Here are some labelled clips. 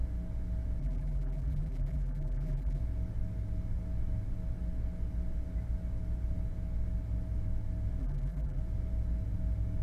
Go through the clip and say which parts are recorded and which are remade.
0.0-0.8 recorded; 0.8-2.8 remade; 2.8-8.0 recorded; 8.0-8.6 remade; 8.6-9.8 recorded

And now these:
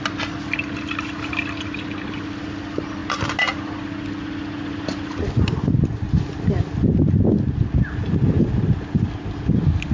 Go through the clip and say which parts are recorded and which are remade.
0.0-9.9 recorded